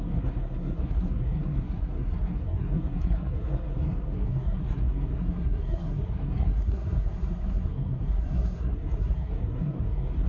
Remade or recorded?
remade